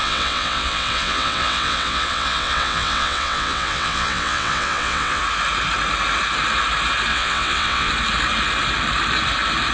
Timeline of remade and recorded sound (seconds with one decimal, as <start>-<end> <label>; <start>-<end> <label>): 0.0-5.2 remade; 5.2-7.1 recorded; 7.1-7.9 remade; 7.9-9.7 recorded